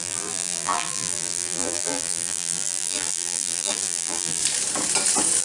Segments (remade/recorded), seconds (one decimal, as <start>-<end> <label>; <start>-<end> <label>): 0.0-4.4 remade; 4.4-5.4 recorded